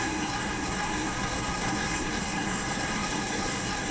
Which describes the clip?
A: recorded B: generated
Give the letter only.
B